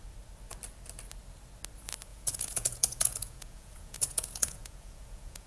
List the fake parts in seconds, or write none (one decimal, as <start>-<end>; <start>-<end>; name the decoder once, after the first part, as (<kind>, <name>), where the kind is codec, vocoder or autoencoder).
2.1-5.5 (vocoder, Vocos)